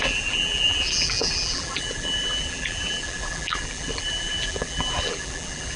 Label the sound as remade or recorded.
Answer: remade